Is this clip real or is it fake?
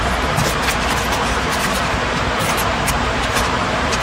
fake